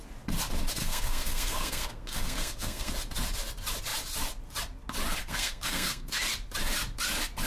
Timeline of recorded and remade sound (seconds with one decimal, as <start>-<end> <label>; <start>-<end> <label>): 0.0-0.8 recorded; 0.8-2.9 remade; 2.9-5.2 recorded; 5.2-6.2 remade; 6.2-7.5 recorded